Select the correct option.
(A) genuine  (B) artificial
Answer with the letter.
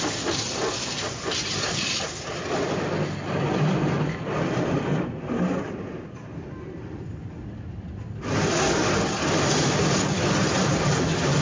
A